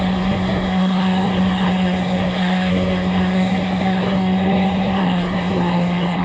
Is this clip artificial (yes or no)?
yes